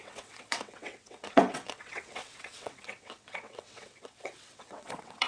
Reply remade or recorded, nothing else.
remade